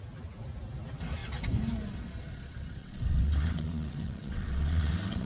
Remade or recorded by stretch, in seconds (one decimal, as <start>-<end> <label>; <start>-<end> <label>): 0.0-2.8 recorded; 2.8-5.3 remade